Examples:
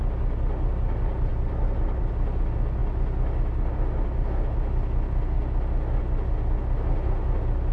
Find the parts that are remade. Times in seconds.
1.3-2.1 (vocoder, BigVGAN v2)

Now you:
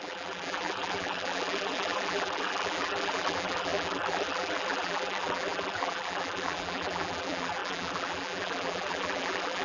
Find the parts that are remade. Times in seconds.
0.0-9.6 (vocoder, BigVGAN v2)

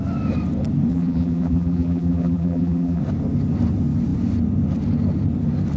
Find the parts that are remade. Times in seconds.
0.9-3.0 (vocoder, BigVGAN v2)

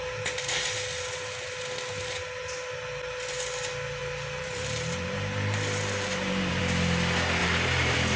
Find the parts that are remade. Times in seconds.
4.0-6.6 (vocoder, BigVGAN v2); 7.4-8.2

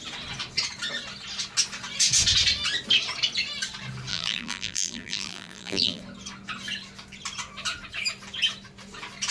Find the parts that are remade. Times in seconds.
4.1-6.0 (vocoder, BigVGAN v2)

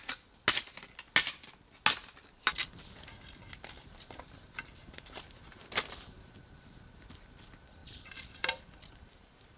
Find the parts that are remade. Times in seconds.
7.8-9.6 (vocoder, BigVGAN v2)

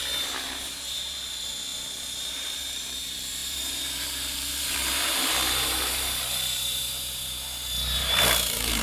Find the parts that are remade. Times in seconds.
0.0-8.8 (vocoder, BigVGAN v2)